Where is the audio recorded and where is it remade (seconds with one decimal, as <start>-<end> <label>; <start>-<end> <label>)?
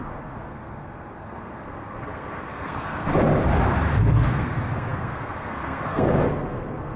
0.0-3.1 remade; 3.1-4.1 recorded; 4.1-7.0 remade